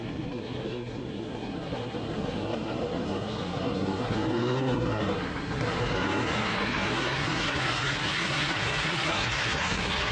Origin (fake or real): fake